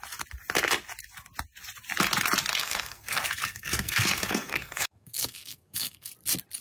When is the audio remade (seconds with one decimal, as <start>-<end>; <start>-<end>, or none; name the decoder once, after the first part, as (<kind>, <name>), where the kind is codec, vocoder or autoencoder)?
2.6-6.1 (codec, SNAC)